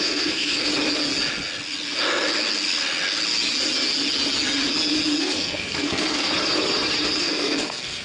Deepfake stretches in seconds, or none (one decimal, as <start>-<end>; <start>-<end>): 0.0-0.7; 5.2-6.3; 7.2-8.0